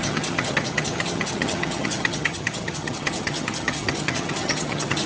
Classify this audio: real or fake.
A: fake